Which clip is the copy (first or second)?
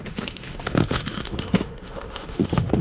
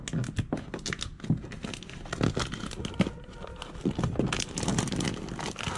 first